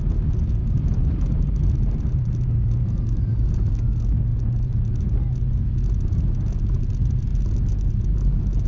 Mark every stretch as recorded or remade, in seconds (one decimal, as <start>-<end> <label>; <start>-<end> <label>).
0.0-0.6 recorded; 0.6-3.7 remade; 3.7-4.3 recorded; 4.3-5.5 remade; 5.5-8.7 recorded